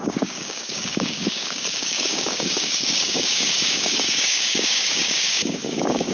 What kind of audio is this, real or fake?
fake